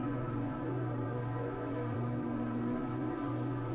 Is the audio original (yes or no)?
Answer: no